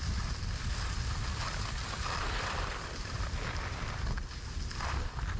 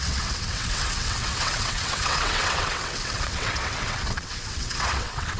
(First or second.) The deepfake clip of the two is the second